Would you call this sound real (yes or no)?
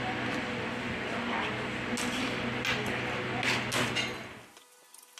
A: yes